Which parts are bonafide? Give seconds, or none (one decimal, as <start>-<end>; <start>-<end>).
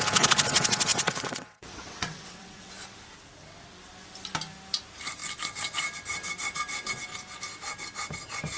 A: 0.0-0.9; 2.7-8.6